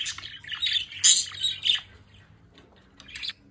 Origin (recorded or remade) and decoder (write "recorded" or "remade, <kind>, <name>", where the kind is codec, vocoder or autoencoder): recorded